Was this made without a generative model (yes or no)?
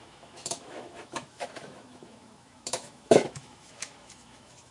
no